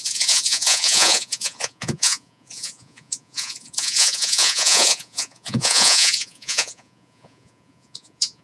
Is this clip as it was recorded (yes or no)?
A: no